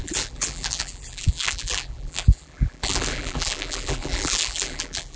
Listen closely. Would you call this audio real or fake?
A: fake